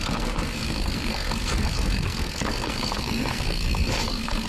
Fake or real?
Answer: fake